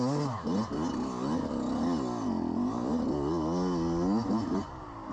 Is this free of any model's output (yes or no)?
yes